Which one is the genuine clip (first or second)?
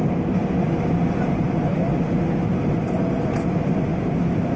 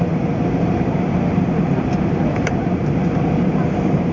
first